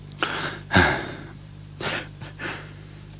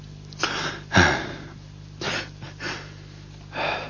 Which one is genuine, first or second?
second